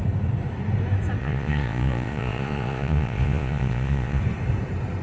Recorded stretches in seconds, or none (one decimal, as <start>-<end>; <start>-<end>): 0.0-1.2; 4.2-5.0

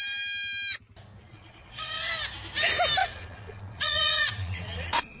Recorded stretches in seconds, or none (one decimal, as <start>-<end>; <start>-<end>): 0.0-1.2; 2.1-3.0

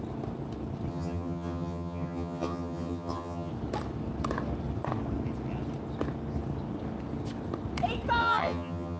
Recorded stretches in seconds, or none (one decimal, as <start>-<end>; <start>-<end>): 0.0-0.9; 3.5-8.2

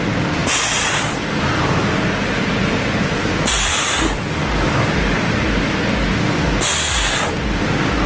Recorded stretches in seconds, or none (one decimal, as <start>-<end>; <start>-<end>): 0.0-8.1

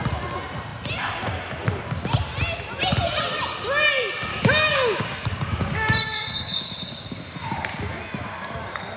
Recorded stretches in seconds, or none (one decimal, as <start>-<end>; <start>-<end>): 0.0-4.3; 7.2-9.0

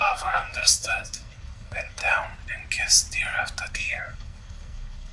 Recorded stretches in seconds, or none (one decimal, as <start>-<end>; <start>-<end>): 2.0-3.7